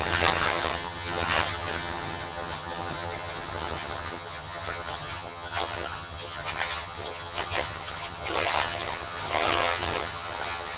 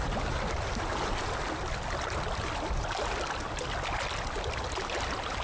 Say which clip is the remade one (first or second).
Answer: first